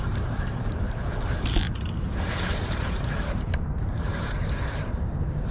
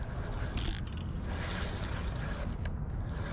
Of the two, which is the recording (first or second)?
second